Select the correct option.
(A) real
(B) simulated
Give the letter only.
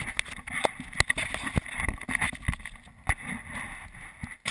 A